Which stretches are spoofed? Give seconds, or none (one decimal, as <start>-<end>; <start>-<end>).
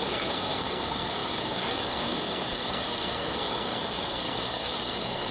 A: 0.0-5.3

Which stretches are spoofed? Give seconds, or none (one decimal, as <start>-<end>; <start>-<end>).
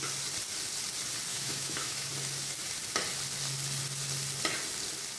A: 1.3-2.1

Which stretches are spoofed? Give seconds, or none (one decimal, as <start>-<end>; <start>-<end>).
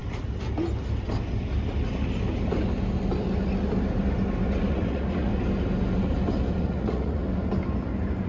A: 4.7-5.3; 6.6-7.2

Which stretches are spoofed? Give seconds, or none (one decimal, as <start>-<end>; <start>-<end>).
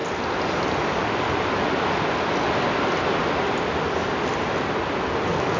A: none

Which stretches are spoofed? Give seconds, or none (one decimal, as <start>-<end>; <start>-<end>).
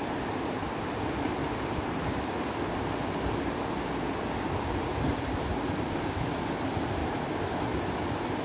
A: 1.4-6.4; 7.0-8.4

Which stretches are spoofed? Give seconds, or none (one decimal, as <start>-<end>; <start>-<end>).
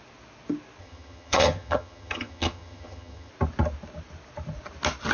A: 0.8-3.3